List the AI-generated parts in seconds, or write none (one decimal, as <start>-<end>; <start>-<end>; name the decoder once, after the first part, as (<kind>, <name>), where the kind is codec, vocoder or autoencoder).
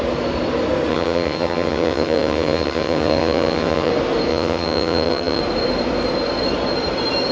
0.9-3.9 (vocoder, HiFi-GAN); 4.3-5.4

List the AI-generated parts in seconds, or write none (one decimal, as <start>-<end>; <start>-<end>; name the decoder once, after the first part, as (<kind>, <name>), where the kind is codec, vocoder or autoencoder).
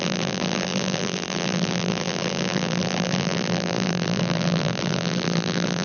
0.0-5.8 (vocoder, BigVGAN v2)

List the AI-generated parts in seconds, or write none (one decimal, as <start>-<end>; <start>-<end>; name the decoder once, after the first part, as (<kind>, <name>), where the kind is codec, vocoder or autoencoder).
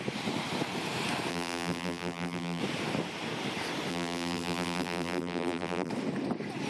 1.3-2.6 (vocoder, BigVGAN v2); 3.9-5.9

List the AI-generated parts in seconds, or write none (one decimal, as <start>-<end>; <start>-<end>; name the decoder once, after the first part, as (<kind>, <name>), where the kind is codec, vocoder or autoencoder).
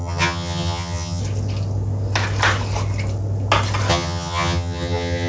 0.0-1.2 (vocoder, HiFi-GAN); 3.9-5.3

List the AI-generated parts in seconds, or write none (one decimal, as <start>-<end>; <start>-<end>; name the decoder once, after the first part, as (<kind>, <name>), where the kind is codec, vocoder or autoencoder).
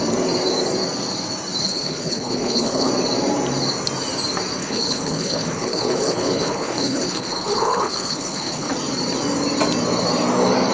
1.6-2.9 (codec, HILCodec); 4.6-8.7